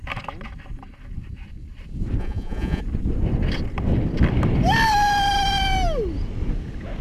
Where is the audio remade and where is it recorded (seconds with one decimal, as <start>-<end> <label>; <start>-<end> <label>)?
0.0-2.2 recorded; 2.2-2.8 remade; 2.8-7.0 recorded